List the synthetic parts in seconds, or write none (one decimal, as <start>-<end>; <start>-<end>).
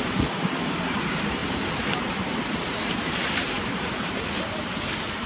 0.0-5.3